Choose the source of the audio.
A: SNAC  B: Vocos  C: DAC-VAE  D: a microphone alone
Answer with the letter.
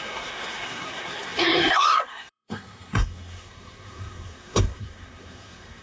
A